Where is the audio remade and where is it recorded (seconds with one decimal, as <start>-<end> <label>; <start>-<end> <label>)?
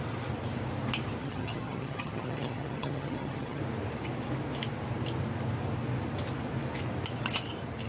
0.0-1.2 recorded; 1.2-3.6 remade; 3.6-7.9 recorded